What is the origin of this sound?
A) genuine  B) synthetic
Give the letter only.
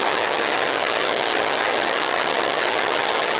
B